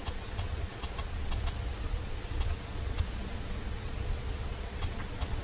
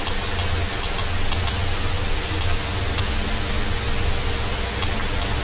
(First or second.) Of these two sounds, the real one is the second